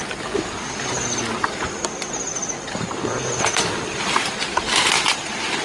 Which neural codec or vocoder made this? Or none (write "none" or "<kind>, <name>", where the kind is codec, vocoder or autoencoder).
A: none